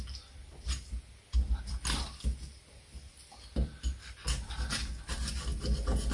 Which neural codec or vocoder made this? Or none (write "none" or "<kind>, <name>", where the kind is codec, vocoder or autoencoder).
none